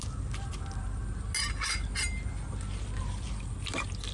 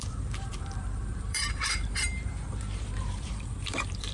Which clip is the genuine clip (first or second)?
first